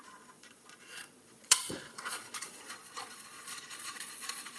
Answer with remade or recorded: remade